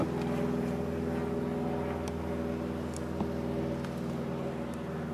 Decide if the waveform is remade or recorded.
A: recorded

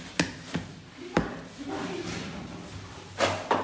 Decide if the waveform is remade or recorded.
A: recorded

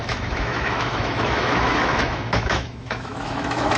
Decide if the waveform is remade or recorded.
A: remade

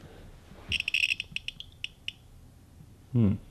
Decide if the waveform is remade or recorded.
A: recorded